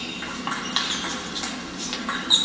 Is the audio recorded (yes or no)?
yes